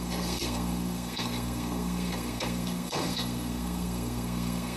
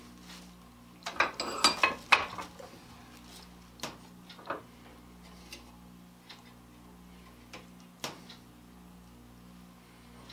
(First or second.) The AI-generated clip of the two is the first